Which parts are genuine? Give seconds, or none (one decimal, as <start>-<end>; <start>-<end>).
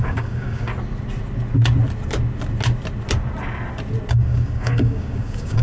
0.7-4.1